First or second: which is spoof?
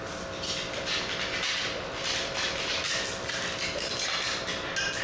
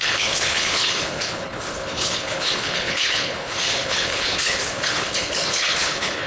second